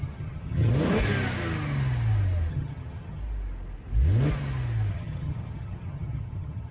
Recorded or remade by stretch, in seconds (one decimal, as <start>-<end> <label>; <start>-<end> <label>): 0.0-0.7 remade; 0.7-2.5 recorded; 2.5-3.2 remade; 3.2-4.9 recorded; 4.9-6.7 remade